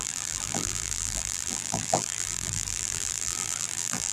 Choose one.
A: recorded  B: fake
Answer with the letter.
B